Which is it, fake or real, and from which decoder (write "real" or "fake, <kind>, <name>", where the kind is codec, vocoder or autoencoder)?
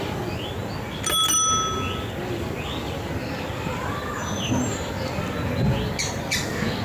real